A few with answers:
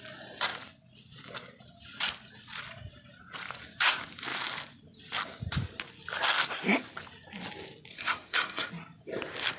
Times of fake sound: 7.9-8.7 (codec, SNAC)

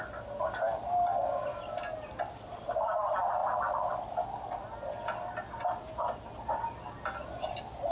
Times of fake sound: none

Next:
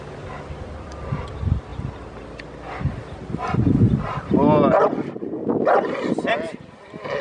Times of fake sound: none

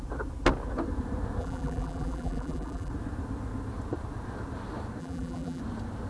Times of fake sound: 1.4-2.9 (vocoder, BigVGAN v2); 5.0-5.6

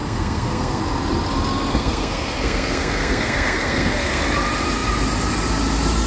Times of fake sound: 0.0-0.8 (codec, SNAC); 1.7-4.2

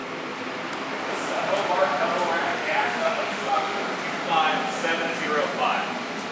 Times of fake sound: 2.4-3.8 (autoencoder, DAC-VAE)